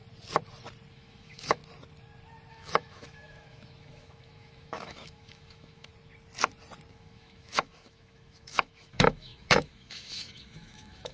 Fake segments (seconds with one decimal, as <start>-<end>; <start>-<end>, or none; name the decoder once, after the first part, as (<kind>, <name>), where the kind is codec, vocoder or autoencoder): 0.9-1.6 (autoencoder, DAC-VAE); 2.5-5.9; 6.9-11.1